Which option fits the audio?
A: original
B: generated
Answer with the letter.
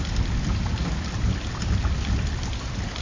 A